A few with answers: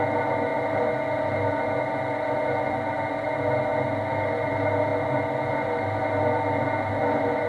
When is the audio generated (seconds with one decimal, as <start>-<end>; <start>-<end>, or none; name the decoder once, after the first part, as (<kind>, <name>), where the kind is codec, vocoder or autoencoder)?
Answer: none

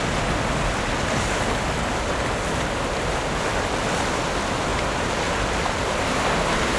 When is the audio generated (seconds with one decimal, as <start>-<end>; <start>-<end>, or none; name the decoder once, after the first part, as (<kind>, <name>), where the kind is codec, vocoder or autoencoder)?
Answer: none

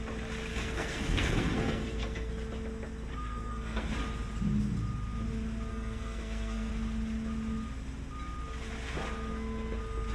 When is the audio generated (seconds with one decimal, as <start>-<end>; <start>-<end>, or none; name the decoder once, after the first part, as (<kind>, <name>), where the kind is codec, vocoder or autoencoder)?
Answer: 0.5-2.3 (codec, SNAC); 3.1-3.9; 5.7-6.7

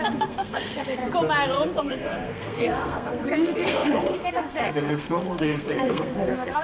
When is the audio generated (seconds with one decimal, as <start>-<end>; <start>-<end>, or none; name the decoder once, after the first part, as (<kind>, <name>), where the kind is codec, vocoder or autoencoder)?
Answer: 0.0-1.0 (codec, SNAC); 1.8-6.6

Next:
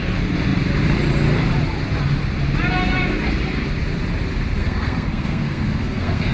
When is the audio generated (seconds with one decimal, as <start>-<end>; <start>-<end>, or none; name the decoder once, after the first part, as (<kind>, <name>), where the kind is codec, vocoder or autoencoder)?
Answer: 4.6-6.3 (codec, SNAC)

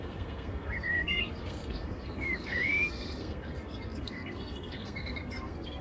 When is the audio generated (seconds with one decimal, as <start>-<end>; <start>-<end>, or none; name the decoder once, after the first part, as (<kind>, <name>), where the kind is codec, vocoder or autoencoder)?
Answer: 0.0-5.8 (codec, SNAC)